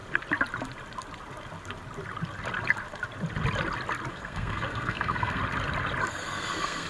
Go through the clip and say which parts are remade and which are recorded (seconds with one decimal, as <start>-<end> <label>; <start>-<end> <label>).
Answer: 0.0-4.1 recorded; 4.1-5.4 remade; 5.4-6.1 recorded; 6.1-6.9 remade